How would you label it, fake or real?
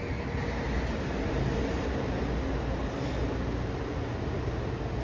real